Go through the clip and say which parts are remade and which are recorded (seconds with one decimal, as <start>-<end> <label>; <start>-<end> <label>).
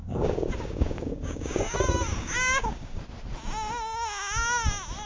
0.0-3.0 remade; 3.0-5.1 recorded